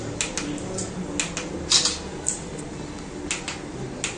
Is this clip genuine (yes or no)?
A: yes